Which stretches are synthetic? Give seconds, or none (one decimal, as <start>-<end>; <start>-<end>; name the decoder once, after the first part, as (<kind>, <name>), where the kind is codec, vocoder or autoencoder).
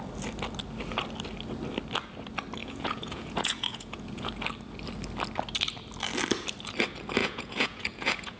2.6-4.3 (vocoder, Vocos); 7.2-8.4